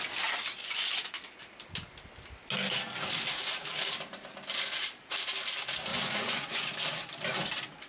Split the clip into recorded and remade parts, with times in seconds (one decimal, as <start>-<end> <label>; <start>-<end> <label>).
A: 0.0-0.6 recorded; 0.6-1.4 remade; 1.4-5.9 recorded; 5.9-6.7 remade; 6.7-7.9 recorded